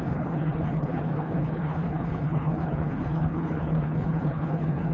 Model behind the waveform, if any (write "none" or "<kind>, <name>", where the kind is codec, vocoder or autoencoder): codec, HILCodec